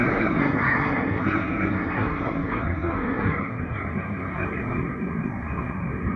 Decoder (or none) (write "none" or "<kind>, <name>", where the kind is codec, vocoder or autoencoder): codec, SNAC